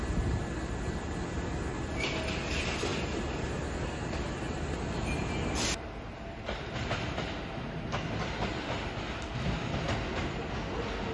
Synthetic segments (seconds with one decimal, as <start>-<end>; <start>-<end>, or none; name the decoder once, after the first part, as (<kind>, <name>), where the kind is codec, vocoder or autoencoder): none